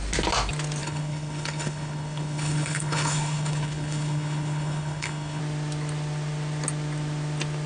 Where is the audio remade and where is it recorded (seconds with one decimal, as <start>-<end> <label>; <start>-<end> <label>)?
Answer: 0.0-0.8 recorded; 0.8-5.4 remade; 5.4-7.7 recorded